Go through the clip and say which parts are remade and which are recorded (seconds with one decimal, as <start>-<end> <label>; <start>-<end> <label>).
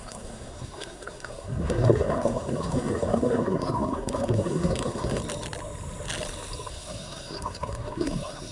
0.0-5.2 remade; 5.2-6.7 recorded; 6.7-8.5 remade